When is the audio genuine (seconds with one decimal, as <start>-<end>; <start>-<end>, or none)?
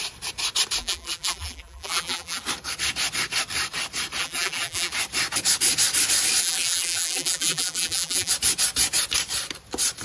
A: 0.0-0.8; 2.4-4.2; 4.9-6.4; 8.3-10.0